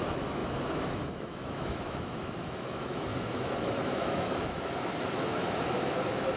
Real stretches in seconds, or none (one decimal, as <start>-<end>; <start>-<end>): none